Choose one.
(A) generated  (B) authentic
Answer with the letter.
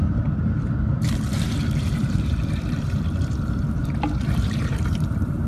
A